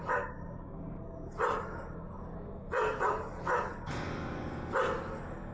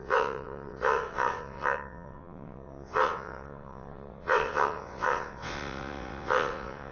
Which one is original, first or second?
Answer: first